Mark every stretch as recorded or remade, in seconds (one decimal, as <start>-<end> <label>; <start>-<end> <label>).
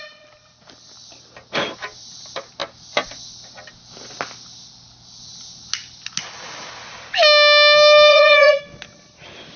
0.0-8.1 recorded; 8.1-8.6 remade; 8.6-9.6 recorded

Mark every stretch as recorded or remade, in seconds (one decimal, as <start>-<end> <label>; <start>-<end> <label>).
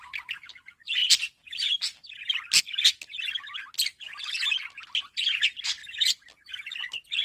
0.0-7.2 recorded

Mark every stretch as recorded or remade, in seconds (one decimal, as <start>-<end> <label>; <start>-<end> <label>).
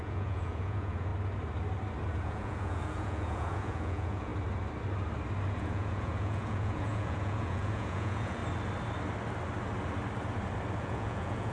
0.0-1.1 remade; 1.1-2.1 recorded; 2.1-4.3 remade; 4.3-5.5 recorded; 5.5-8.4 remade; 8.4-10.8 recorded; 10.8-11.5 remade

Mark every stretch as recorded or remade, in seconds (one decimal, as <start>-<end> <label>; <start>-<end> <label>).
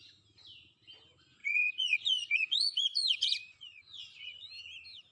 0.0-1.4 recorded; 1.4-4.5 remade; 4.5-5.1 recorded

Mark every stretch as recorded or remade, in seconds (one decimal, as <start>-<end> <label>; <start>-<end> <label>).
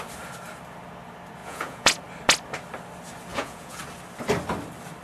0.0-1.4 recorded; 1.4-2.0 remade; 2.0-3.3 recorded; 3.3-3.8 remade; 3.8-5.0 recorded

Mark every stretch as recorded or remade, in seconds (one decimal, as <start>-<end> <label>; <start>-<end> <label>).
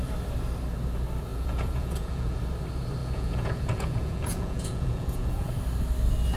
0.0-1.3 recorded; 1.3-2.4 remade; 2.4-3.0 recorded; 3.0-5.5 remade; 5.5-6.4 recorded